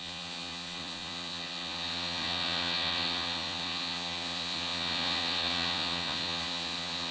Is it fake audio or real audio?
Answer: fake